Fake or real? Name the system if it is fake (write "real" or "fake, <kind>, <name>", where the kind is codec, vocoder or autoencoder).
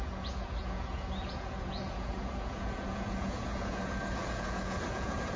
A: fake, vocoder, Vocos